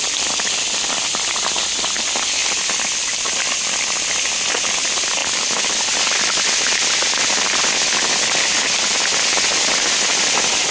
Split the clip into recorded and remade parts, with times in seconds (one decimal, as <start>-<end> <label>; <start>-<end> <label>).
0.0-10.7 recorded